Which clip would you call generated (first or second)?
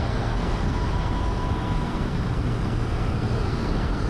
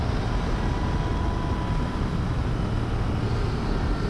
first